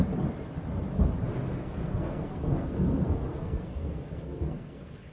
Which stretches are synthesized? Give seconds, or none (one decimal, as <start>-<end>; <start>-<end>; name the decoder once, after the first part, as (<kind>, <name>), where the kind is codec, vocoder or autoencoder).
1.6-5.1 (codec, SNAC)